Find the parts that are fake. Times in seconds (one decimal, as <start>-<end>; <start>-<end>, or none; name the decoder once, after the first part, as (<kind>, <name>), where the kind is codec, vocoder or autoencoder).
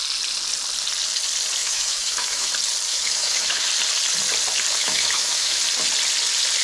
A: 1.6-2.5 (autoencoder, DAC-VAE); 2.9-3.7; 4.8-5.6